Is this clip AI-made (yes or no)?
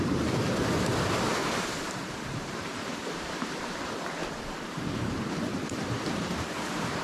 yes